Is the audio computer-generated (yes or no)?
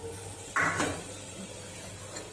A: no